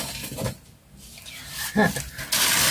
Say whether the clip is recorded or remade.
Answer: recorded